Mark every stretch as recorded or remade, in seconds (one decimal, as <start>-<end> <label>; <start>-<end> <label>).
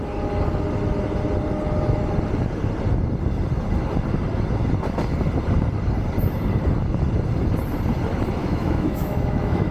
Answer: 0.0-8.4 recorded; 8.4-9.7 remade